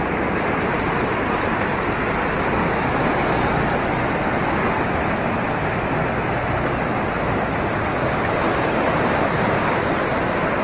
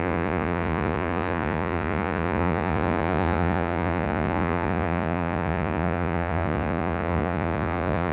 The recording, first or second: first